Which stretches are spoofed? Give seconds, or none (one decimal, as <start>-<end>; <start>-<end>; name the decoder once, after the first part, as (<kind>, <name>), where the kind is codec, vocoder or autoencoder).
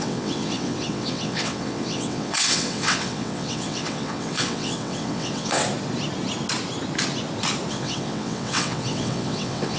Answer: 0.0-5.6 (vocoder, WaveNeXt); 7.7-9.8